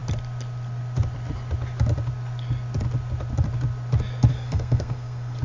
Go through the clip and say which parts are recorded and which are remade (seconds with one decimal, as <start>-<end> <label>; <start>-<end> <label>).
0.0-4.3 recorded; 4.3-5.4 remade

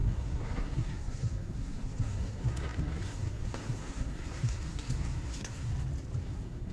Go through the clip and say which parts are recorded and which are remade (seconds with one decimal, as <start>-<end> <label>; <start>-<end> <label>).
0.0-5.7 remade; 5.7-6.2 recorded; 6.2-6.7 remade

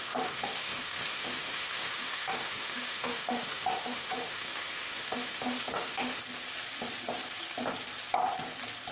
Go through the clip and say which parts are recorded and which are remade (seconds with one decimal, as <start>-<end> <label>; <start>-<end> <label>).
0.0-6.2 remade; 6.2-8.9 recorded

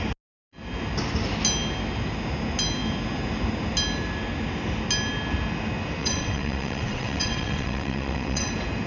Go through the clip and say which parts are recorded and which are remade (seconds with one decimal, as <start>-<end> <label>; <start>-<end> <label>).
0.0-6.0 recorded; 6.0-8.5 remade; 8.5-8.9 recorded

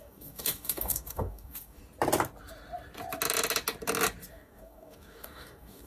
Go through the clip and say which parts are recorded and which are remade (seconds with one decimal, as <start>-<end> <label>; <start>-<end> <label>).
0.0-1.8 remade; 1.8-4.3 recorded; 4.3-5.9 remade

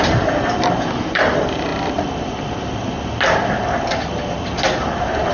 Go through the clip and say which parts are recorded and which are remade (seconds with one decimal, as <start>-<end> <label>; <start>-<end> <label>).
0.0-1.7 remade; 1.7-5.3 recorded

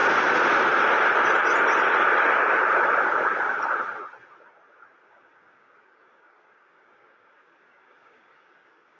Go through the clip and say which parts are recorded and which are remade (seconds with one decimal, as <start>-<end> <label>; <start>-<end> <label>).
0.0-5.0 recorded; 5.0-9.0 remade